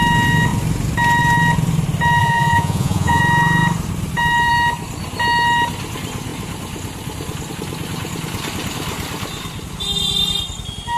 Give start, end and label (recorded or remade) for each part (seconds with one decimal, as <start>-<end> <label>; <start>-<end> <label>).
0.0-2.2 recorded; 2.2-3.2 remade; 3.2-11.0 recorded